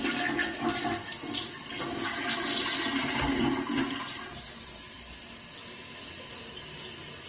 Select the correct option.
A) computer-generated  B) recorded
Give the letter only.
B